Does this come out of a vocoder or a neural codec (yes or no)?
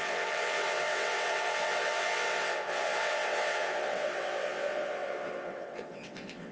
yes